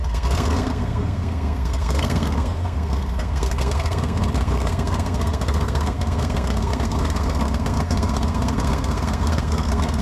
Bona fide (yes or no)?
no